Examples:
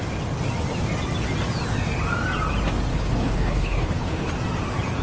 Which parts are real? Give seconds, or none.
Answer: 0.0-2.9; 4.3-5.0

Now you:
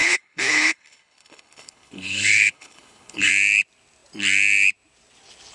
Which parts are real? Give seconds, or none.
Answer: 3.3-5.5

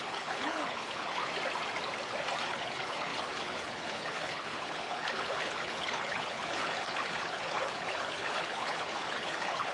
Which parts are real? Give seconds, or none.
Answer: 1.2-2.4